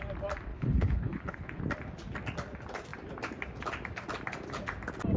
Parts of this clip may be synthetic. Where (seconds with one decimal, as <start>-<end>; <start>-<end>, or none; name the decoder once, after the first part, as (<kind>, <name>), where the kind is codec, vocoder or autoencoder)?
0.5-1.6 (codec, HILCodec)